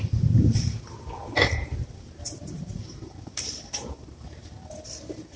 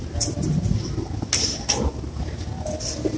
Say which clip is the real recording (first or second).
second